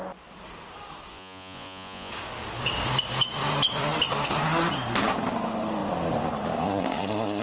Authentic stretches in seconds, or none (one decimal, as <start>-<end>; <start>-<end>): 0.0-1.1; 2.1-7.4